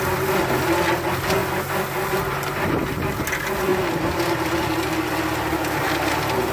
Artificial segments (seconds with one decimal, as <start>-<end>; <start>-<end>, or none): none